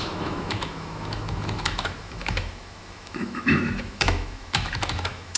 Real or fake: fake